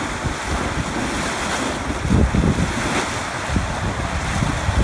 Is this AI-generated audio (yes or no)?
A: no